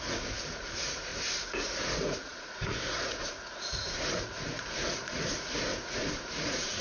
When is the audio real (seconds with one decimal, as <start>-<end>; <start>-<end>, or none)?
1.1-1.8